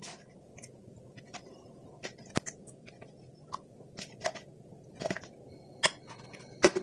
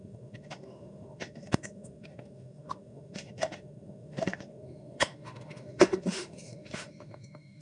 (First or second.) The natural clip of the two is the first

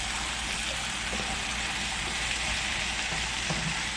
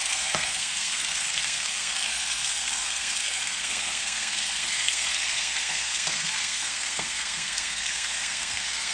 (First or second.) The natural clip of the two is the first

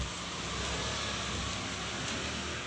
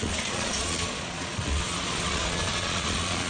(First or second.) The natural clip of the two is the first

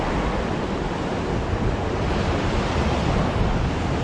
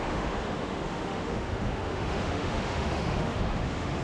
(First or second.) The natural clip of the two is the first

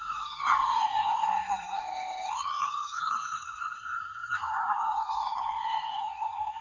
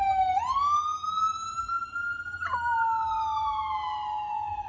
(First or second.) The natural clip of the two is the second